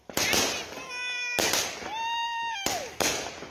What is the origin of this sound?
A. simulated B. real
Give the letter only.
B